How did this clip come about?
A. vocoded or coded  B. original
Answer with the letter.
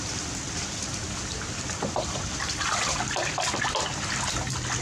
B